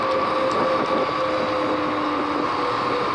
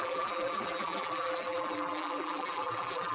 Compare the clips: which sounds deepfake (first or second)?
second